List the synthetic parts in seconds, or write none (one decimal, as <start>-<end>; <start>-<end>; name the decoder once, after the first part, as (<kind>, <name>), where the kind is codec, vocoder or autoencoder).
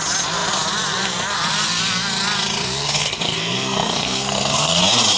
2.8-4.8 (codec, SNAC)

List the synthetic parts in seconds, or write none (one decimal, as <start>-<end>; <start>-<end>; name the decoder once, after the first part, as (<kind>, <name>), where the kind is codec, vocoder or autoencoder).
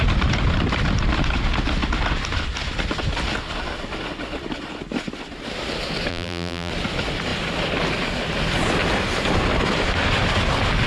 6.1-6.7 (vocoder, BigVGAN v2)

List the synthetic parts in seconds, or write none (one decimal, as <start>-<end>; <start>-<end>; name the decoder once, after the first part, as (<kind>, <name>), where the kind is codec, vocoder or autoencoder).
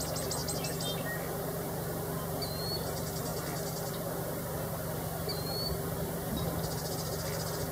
none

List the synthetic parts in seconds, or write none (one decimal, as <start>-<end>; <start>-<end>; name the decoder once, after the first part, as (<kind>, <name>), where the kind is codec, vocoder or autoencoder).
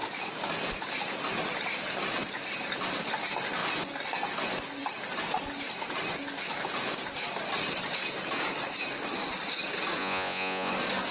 10.0-10.7 (vocoder, Vocos)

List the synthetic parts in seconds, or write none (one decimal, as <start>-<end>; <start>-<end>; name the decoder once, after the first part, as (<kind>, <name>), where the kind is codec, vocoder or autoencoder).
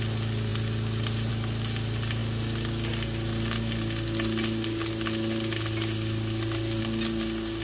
none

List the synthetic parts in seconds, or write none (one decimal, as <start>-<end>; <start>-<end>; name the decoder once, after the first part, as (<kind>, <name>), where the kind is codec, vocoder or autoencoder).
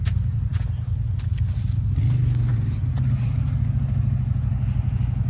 none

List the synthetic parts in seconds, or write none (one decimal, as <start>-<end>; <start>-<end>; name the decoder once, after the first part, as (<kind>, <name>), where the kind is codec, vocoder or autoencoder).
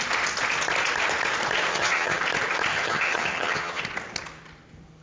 1.7-2.2 (vocoder, HiFi-GAN); 2.7-3.8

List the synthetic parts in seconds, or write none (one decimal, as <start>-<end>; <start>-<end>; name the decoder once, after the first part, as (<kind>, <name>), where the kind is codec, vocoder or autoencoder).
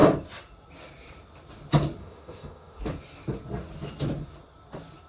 2.0-2.8 (autoencoder, DAC-VAE)